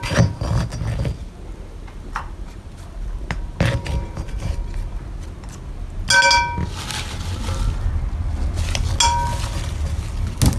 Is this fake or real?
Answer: real